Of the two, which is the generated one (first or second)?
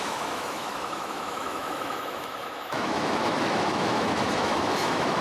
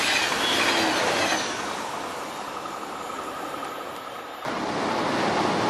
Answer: first